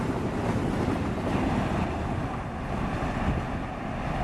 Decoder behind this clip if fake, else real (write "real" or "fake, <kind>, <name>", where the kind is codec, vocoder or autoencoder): real